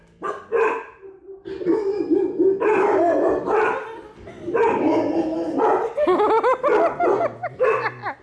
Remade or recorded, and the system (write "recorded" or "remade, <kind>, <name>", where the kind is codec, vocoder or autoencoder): recorded